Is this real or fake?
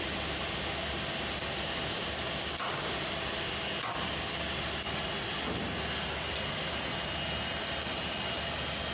real